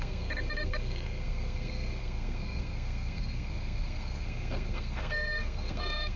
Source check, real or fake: fake